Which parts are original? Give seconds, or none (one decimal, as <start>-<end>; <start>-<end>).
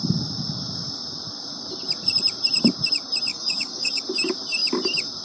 0.0-3.3; 4.0-5.2